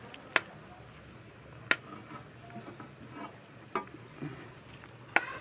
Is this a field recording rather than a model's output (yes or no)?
yes